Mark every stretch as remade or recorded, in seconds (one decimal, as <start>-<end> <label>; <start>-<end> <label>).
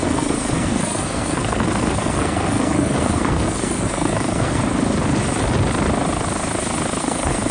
0.0-4.6 remade; 4.6-7.0 recorded; 7.0-7.5 remade